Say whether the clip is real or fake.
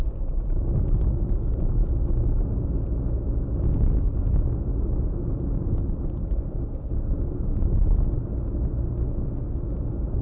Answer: real